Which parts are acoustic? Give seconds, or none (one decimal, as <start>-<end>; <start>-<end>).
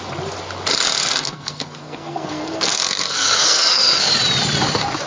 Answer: 0.0-1.0; 4.1-5.1